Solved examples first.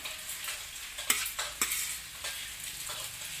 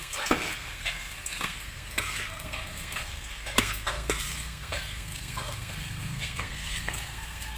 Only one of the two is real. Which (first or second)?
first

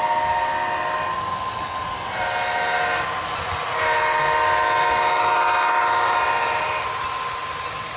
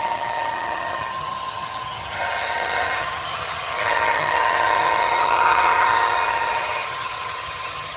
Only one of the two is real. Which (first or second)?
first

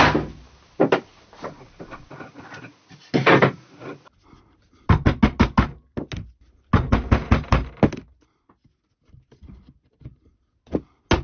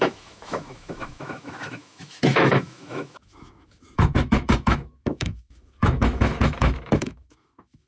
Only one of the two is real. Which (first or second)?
first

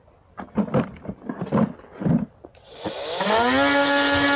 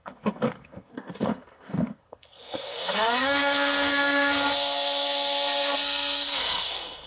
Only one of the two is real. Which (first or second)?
first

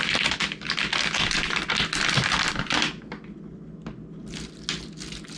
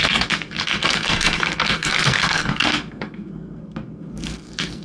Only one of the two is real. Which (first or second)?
first